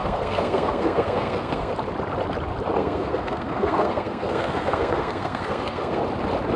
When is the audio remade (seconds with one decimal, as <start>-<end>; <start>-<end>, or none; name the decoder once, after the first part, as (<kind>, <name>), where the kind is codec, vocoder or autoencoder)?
0.0-1.7 (codec, SNAC); 2.8-6.0